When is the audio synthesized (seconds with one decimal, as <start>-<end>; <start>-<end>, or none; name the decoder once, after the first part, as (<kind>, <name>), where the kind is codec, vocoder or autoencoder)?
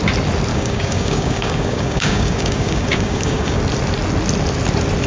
0.5-3.6 (codec, DAC)